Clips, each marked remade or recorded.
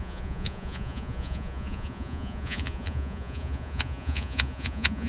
remade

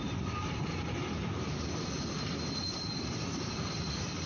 remade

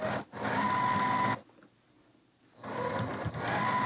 recorded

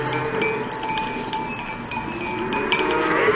recorded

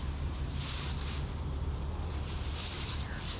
remade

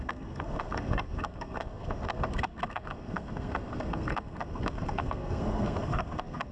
remade